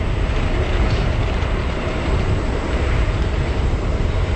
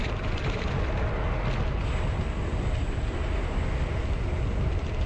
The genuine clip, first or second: second